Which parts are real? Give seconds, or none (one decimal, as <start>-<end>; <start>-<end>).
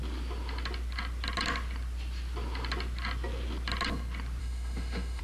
0.0-4.4